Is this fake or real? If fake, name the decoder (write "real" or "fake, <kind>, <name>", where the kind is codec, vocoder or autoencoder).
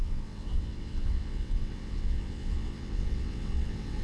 fake, vocoder, WaveNeXt